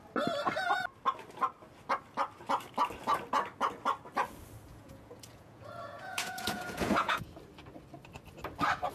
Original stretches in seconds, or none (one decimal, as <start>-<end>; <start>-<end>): 0.0-4.7; 7.3-8.9